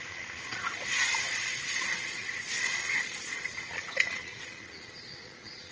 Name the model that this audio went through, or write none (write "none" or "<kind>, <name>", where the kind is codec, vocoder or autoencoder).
vocoder, Vocos